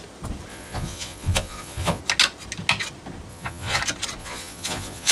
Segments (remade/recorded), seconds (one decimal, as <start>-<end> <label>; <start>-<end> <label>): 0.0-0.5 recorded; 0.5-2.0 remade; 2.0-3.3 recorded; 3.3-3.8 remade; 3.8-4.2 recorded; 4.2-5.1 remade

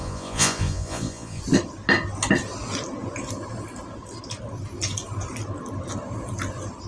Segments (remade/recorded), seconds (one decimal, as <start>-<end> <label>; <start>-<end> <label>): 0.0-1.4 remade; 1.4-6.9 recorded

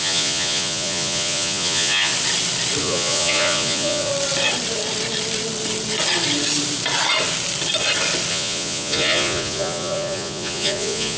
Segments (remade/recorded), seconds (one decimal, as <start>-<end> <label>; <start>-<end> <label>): 0.0-2.1 remade; 2.1-2.8 recorded; 2.8-4.1 remade; 4.1-8.3 recorded; 8.3-11.2 remade

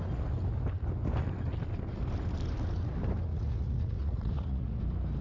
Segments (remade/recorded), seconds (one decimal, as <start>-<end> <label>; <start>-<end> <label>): 0.0-3.3 recorded; 3.3-4.8 remade; 4.8-5.2 recorded

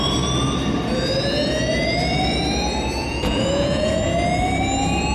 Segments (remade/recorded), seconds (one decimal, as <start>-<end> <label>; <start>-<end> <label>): 0.0-3.0 recorded; 3.0-4.0 remade; 4.0-5.1 recorded